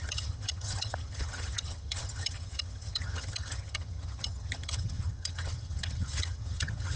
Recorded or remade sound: remade